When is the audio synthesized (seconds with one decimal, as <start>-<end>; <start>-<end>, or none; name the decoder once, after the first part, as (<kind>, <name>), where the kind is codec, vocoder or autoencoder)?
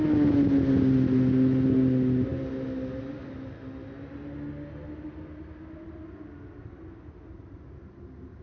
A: none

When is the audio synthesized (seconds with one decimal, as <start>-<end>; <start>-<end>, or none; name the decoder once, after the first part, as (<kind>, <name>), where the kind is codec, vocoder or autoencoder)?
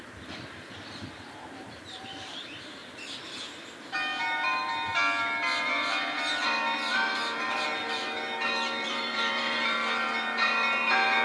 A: 0.0-2.8 (vocoder, BigVGAN v2); 4.2-4.9; 5.6-11.2